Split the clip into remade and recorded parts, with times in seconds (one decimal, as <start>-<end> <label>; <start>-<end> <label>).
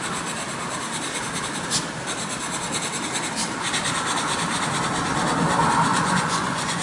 0.0-5.9 recorded; 5.9-6.8 remade